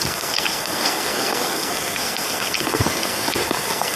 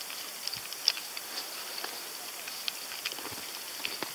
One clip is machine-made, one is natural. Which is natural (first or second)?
second